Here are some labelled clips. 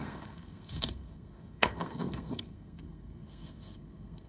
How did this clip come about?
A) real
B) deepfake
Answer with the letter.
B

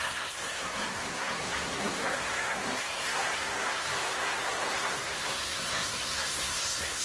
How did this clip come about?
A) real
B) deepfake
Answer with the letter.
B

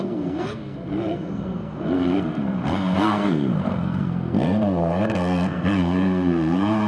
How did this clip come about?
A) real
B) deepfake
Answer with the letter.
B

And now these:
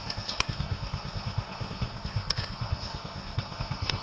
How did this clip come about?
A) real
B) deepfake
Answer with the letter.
B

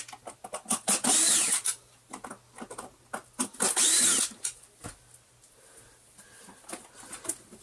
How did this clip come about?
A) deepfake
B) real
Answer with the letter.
B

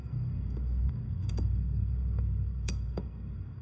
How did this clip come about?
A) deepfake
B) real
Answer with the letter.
A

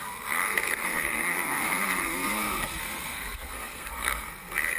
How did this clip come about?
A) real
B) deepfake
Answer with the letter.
B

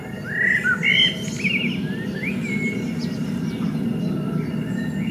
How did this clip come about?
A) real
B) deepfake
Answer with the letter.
A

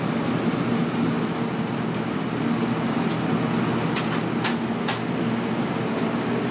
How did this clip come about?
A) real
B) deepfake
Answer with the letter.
A